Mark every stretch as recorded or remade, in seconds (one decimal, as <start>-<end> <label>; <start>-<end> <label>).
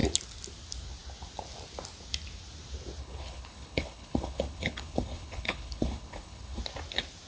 0.0-3.0 recorded; 3.0-6.6 remade; 6.6-7.3 recorded